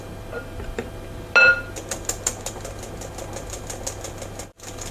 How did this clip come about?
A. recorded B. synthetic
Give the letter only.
A